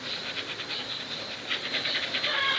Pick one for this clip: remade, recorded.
recorded